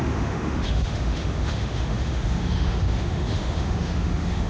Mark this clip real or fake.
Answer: fake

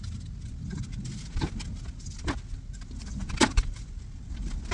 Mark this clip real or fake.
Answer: real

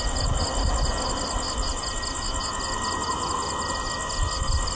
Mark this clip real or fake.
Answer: real